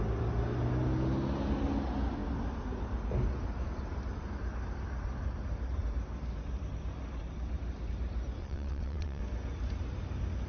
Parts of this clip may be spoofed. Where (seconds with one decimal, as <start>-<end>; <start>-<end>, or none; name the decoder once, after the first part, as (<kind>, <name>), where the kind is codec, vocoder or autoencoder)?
8.4-9.2 (vocoder, WaveNeXt)